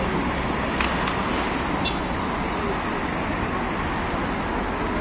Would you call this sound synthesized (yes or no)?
no